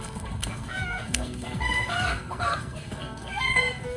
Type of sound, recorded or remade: remade